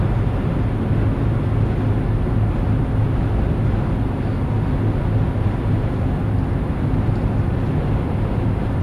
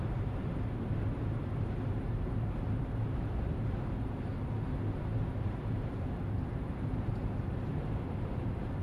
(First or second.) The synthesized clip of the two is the second